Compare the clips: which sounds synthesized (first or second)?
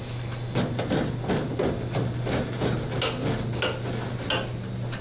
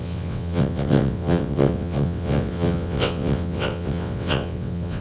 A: second